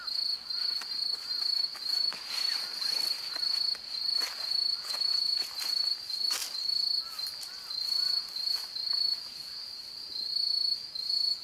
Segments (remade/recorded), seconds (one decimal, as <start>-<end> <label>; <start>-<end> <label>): 0.0-11.4 recorded